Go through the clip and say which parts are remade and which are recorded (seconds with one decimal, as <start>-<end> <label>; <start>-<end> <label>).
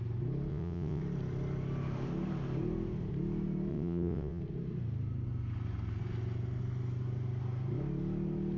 0.0-0.5 recorded; 0.5-1.0 remade; 1.0-3.7 recorded; 3.7-4.4 remade; 4.4-8.6 recorded